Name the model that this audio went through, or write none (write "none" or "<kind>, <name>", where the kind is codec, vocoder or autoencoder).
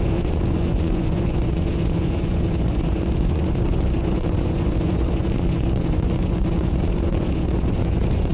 vocoder, Vocos